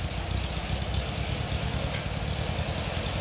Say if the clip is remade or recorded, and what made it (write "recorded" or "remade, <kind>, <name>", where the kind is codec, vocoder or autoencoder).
recorded